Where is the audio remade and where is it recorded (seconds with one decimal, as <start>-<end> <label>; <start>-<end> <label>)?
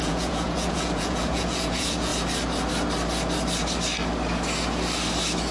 0.0-2.1 remade; 2.1-5.5 recorded